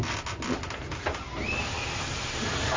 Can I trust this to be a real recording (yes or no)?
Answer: yes